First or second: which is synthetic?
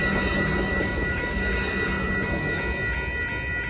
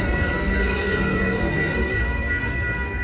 second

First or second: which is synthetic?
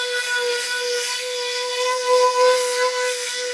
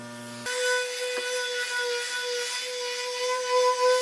first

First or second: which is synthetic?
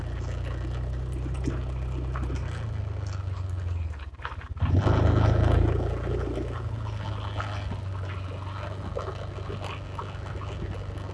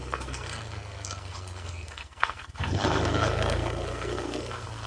second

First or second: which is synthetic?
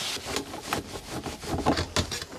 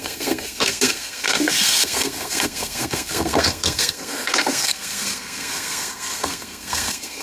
second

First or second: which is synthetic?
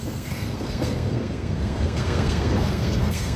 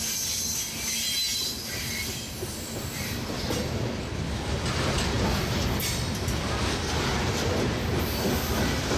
first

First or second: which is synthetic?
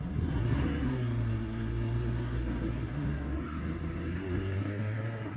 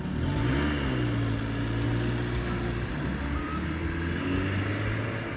first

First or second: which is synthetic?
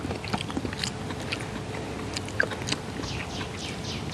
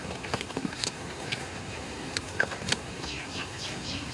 second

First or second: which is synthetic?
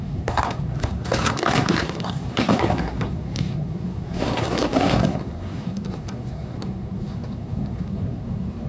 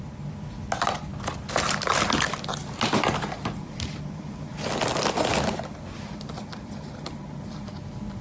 first